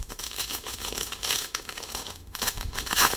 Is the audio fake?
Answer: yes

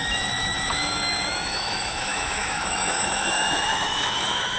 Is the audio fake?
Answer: yes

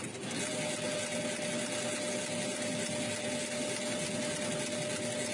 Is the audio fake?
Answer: no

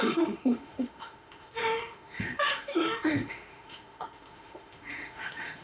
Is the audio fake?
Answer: yes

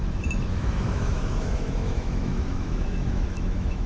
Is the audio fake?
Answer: yes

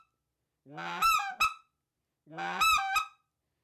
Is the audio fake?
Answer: no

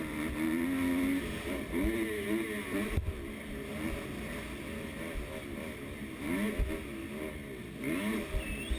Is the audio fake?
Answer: no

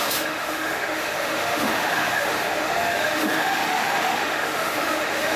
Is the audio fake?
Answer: yes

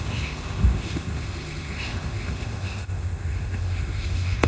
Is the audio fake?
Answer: yes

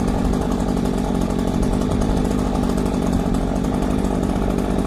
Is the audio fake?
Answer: no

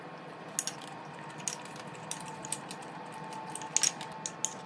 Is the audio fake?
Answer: no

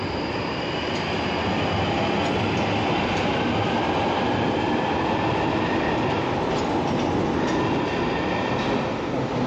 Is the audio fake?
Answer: no